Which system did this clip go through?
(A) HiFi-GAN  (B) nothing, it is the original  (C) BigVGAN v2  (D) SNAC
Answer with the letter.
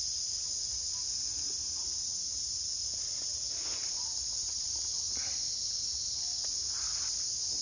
C